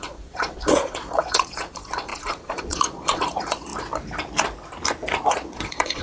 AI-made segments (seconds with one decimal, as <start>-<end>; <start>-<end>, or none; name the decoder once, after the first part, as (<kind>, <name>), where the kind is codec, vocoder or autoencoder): 0.0-3.7 (vocoder, Vocos); 5.3-6.0

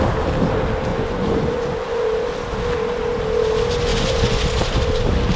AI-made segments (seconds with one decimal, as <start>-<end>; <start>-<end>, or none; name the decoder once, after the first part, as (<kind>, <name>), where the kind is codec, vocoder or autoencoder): 0.9-2.0 (vocoder, Vocos); 3.9-4.4

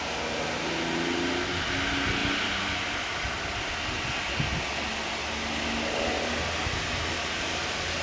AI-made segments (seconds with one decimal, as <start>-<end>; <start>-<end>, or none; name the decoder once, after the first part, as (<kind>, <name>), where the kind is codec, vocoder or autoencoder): none

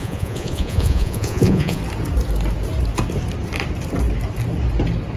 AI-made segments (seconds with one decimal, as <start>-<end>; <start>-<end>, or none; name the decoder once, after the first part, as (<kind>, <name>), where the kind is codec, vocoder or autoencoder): 0.0-1.8 (vocoder, Vocos)